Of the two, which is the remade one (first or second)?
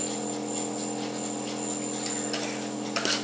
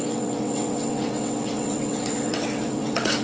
second